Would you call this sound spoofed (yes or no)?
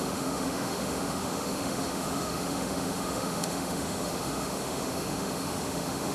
yes